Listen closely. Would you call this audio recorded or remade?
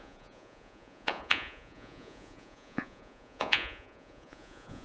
remade